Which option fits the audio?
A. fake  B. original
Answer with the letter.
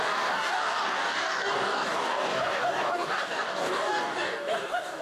A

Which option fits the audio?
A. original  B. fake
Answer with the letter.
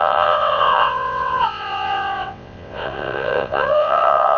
B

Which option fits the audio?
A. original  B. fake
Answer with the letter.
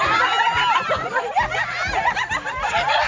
A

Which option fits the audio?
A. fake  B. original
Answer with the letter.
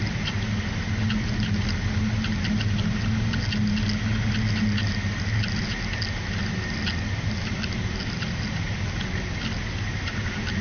B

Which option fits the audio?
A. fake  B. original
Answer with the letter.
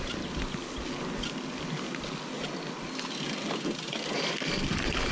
B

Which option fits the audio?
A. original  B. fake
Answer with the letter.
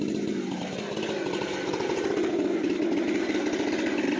A